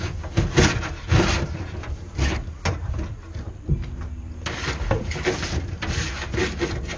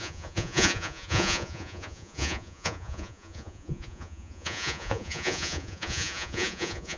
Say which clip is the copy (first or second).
second